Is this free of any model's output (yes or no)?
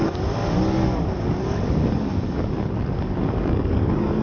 no